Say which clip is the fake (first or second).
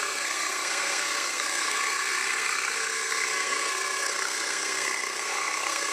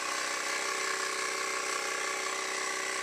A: first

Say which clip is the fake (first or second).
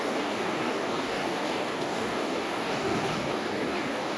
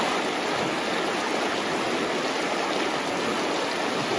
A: first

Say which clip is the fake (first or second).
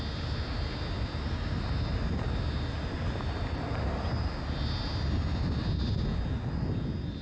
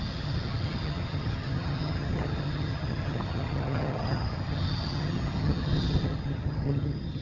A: second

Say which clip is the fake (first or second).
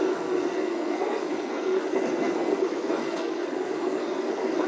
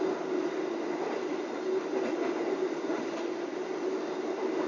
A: first